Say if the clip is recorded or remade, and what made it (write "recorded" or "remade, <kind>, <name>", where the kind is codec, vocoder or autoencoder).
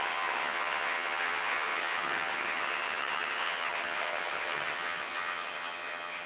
remade, vocoder, HiFi-GAN